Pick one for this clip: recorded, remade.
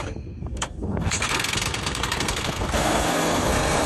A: remade